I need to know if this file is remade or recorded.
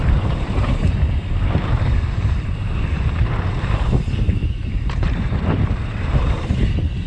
remade